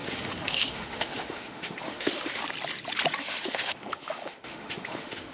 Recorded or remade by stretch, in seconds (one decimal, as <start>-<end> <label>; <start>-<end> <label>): 0.0-2.4 remade; 2.4-3.2 recorded; 3.2-5.3 remade